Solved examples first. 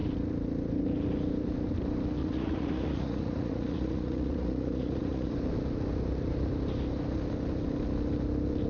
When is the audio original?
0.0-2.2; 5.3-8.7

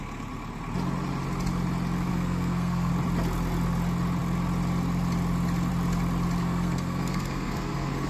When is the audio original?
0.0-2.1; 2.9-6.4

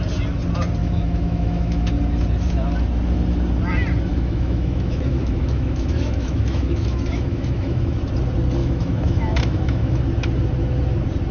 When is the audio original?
0.0-0.8; 1.9-4.1; 8.0-8.6; 10.0-11.3

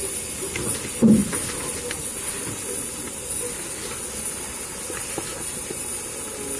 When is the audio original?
0.0-6.6